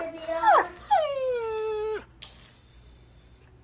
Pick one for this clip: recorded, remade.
recorded